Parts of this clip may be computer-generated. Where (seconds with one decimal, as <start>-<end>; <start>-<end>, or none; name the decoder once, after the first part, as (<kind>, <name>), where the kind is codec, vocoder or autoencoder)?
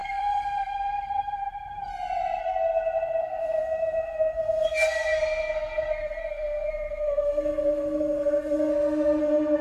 0.0-1.9 (codec, SNAC); 2.4-8.7; 9.2-9.6